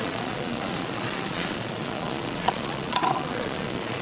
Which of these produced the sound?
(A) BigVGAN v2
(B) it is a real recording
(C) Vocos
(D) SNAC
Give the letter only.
C